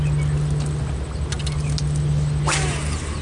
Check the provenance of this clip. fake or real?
real